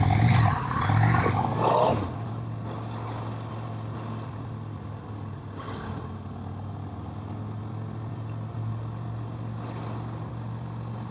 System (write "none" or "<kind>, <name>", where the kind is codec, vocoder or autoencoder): none